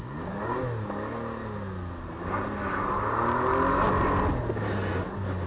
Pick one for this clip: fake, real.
real